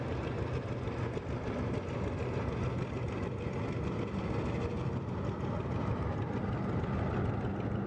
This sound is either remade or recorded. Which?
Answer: recorded